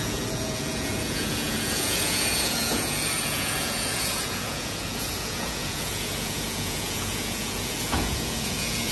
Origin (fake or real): fake